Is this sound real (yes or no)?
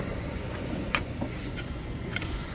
no